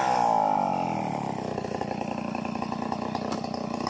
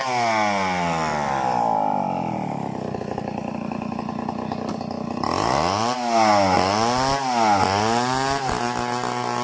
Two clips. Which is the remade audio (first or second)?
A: first